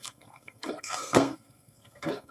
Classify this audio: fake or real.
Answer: fake